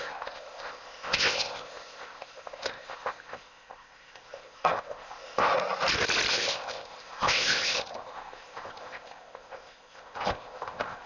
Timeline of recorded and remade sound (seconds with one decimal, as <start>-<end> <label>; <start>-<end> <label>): 0.0-5.5 remade; 5.5-6.3 recorded; 6.3-11.1 remade